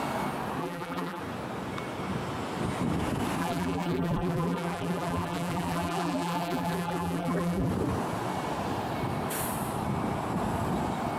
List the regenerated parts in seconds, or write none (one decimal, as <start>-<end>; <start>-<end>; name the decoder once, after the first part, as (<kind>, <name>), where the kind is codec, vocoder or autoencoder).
0.6-1.2 (vocoder, BigVGAN v2); 3.4-7.7